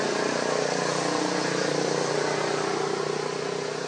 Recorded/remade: recorded